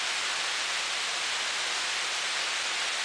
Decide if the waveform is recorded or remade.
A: recorded